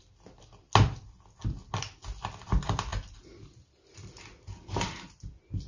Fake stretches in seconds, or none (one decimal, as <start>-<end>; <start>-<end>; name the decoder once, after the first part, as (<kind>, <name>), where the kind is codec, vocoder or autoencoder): none